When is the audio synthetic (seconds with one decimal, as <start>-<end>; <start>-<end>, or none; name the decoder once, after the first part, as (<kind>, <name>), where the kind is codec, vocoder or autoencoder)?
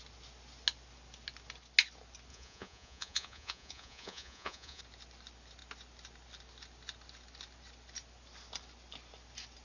2.3-4.8 (vocoder, Vocos)